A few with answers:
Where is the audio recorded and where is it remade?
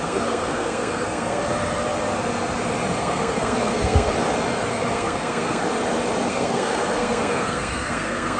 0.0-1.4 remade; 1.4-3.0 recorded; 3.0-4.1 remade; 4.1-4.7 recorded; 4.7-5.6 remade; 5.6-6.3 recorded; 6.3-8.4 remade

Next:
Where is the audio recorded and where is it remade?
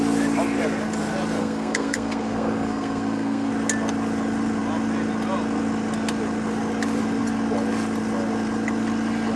0.0-1.4 recorded; 1.4-3.5 remade; 3.5-9.4 recorded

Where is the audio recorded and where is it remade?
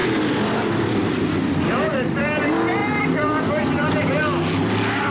0.0-2.8 recorded; 2.8-3.9 remade; 3.9-5.1 recorded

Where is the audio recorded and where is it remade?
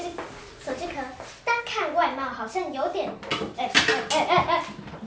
0.0-2.0 recorded; 2.0-2.8 remade; 2.8-3.3 recorded; 3.3-3.8 remade; 3.8-5.1 recorded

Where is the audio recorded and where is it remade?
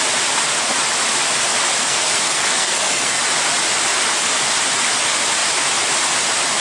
0.0-1.8 recorded; 1.8-3.2 remade; 3.2-6.6 recorded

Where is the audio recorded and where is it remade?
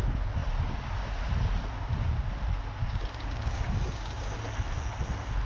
0.0-2.8 recorded; 2.8-4.3 remade; 4.3-5.4 recorded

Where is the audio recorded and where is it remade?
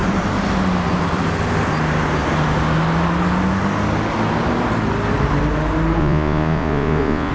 0.0-6.0 recorded; 6.0-7.3 remade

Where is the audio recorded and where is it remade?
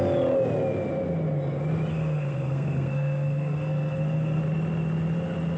0.0-1.9 recorded; 1.9-4.4 remade; 4.4-5.6 recorded